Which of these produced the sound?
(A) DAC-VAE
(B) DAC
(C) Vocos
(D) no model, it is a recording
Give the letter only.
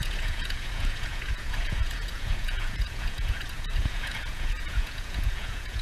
C